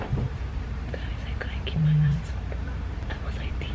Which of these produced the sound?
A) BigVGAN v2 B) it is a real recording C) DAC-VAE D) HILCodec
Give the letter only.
A